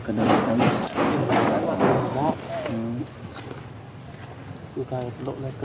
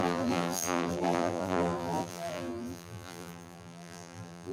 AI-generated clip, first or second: second